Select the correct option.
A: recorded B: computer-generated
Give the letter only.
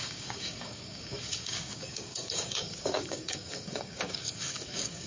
B